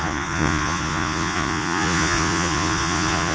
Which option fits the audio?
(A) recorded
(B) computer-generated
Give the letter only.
B